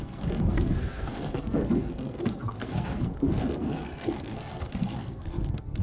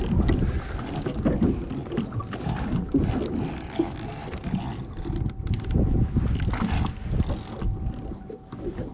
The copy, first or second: first